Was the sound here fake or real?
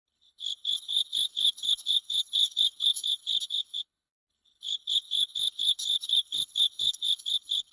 fake